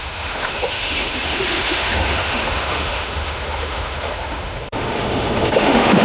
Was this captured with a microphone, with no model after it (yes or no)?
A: no